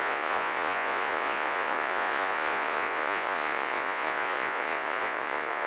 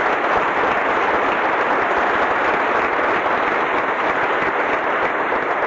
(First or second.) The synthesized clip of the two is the first